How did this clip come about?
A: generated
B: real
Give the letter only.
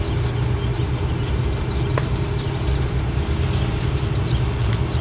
B